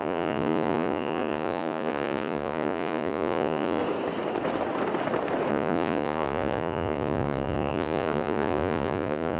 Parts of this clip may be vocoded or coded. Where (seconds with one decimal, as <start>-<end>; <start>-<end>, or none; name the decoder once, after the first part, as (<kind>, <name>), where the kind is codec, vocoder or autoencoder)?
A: 0.0-3.8 (vocoder, Vocos); 5.5-9.4